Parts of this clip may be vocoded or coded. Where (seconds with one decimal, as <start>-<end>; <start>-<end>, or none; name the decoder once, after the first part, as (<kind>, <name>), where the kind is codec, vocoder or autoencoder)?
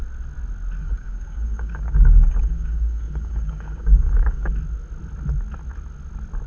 0.8-4.5 (codec, DAC)